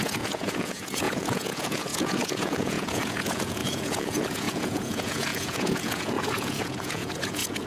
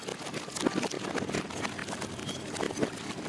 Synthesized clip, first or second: first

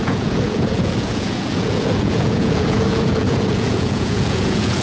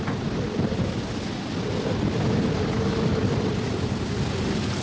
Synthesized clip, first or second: first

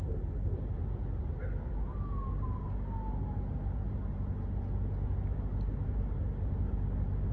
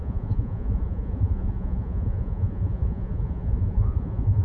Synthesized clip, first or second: second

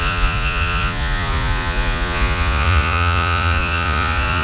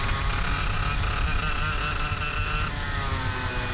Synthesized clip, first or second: first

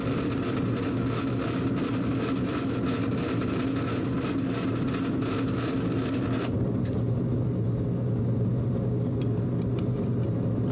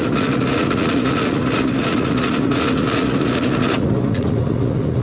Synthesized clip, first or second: second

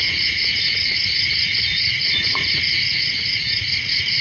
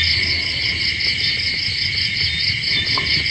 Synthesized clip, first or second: first